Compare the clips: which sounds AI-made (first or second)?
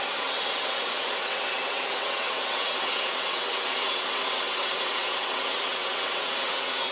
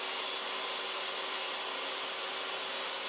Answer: first